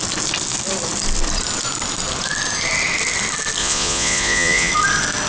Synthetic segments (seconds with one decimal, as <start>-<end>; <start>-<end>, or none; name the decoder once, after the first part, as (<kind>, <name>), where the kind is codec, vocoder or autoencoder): 3.6-4.7 (vocoder, Vocos)